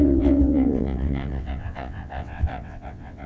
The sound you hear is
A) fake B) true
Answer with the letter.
A